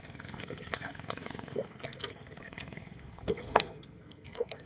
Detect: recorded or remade remade